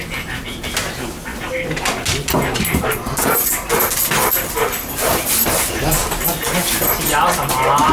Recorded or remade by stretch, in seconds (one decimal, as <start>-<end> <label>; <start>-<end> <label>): 0.0-7.9 recorded